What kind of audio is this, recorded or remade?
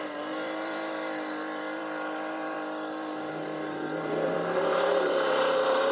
remade